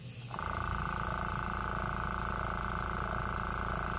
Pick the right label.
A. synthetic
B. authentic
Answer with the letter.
B